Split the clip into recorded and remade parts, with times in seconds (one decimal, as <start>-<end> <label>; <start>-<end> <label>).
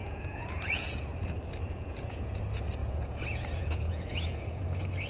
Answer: 0.0-1.2 remade; 1.2-1.6 recorded; 1.6-2.4 remade; 2.4-2.8 recorded; 2.8-4.6 remade; 4.6-5.1 recorded